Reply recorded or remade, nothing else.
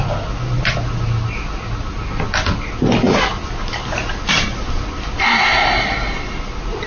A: recorded